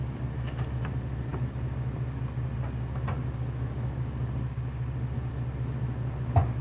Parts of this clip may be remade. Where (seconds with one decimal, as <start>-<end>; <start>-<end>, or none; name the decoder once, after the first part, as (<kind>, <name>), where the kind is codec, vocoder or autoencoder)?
none